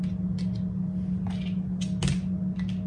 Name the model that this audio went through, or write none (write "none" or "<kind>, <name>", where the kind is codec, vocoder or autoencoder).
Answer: none